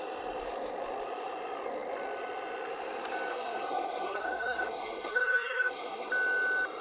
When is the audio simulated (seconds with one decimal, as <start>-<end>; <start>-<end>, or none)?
3.3-6.1